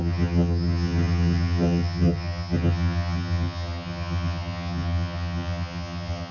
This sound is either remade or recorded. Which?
remade